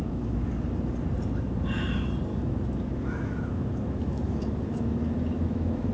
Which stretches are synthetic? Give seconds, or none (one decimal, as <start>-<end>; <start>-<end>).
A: 0.0-0.5; 2.3-5.9